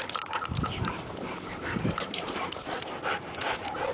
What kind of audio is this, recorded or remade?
remade